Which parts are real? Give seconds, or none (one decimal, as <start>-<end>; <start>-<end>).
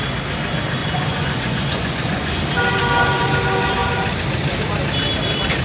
0.0-0.8; 2.4-5.6